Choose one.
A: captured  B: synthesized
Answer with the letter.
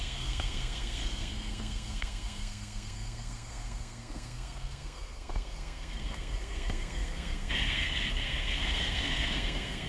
B